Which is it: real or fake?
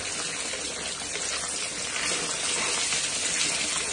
real